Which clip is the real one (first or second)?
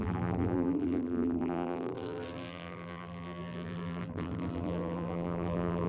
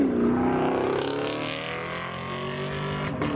second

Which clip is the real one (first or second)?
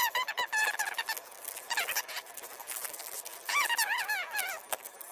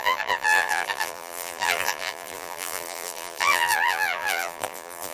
first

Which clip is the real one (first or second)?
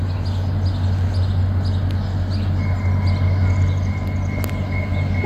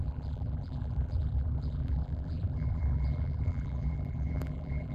first